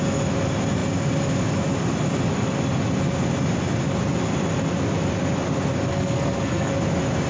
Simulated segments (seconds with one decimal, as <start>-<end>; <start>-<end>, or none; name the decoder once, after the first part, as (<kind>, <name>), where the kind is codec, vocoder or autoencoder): 5.9-6.7 (codec, SNAC)